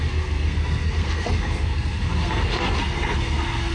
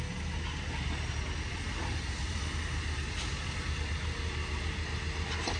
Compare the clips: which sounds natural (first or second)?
second